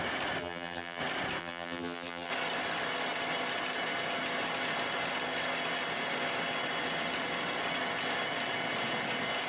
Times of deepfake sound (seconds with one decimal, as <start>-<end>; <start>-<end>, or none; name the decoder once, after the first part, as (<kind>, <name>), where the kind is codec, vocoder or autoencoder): 0.4-1.0 (vocoder, BigVGAN v2); 1.4-2.3